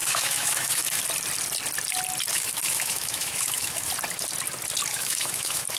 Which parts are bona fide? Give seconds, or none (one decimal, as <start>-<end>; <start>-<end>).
1.0-2.3; 3.9-4.9